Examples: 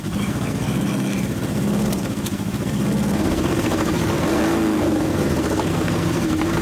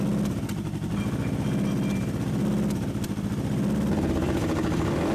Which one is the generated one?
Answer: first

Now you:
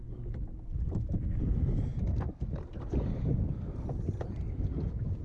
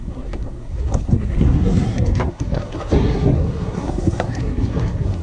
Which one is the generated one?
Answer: second